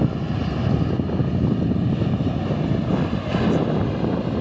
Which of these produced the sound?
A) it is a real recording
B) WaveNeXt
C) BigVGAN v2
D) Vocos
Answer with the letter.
A